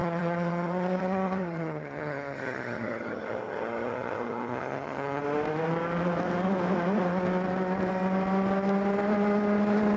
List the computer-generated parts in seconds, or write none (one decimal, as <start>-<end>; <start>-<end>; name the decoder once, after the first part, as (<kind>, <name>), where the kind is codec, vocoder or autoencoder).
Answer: 0.0-5.2 (vocoder, HiFi-GAN)